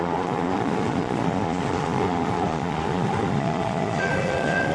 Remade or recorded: remade